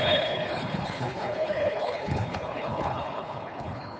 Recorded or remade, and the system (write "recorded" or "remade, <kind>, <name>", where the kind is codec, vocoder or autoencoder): remade, codec, HILCodec